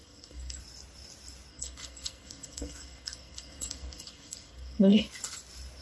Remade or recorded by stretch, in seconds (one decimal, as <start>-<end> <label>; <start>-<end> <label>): 0.0-0.6 remade; 0.6-1.5 recorded; 1.5-5.0 remade; 5.0-5.8 recorded

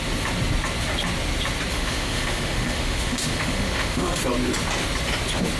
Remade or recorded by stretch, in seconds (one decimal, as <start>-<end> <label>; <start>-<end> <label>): 0.0-1.7 recorded; 1.7-4.2 remade; 4.2-5.6 recorded

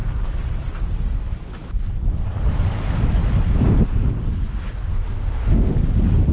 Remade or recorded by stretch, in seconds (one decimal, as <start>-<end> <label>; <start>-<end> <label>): 0.0-4.9 recorded; 4.9-5.7 remade; 5.7-6.3 recorded